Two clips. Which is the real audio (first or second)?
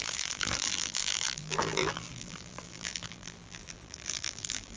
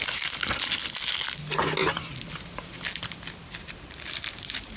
second